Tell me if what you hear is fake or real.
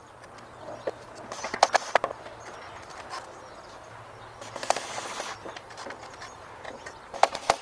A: real